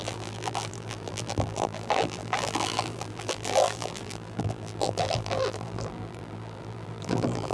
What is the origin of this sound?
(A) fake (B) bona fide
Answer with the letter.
A